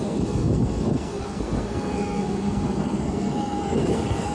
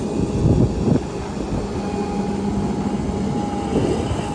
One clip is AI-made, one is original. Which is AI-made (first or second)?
first